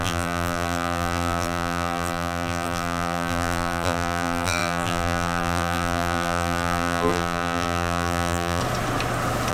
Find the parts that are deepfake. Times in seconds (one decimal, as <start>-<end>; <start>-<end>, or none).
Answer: 0.0-8.6